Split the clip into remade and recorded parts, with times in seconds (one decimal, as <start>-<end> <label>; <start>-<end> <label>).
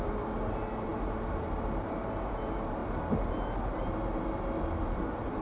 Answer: 0.0-5.4 recorded